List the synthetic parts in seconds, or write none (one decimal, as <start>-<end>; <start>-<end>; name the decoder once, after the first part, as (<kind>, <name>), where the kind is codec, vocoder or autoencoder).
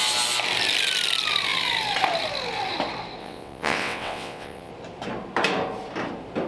3.2-4.7 (vocoder, WaveNeXt)